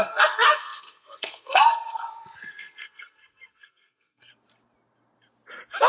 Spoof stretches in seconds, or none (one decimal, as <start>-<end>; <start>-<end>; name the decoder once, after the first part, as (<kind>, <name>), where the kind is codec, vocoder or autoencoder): 0.0-4.3 (codec, SNAC)